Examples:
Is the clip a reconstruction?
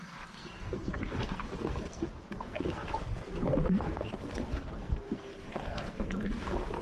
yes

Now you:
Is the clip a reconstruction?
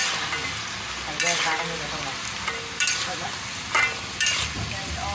no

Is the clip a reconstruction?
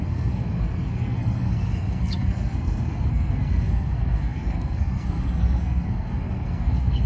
yes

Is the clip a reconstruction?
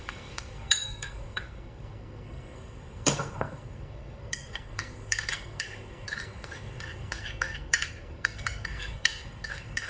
yes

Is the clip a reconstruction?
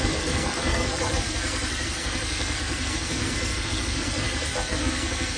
yes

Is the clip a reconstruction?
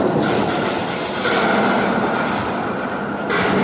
no